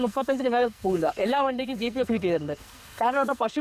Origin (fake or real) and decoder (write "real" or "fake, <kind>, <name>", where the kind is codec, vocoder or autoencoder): fake, codec, SNAC